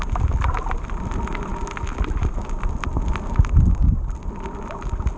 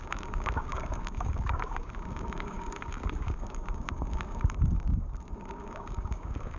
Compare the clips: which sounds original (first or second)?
first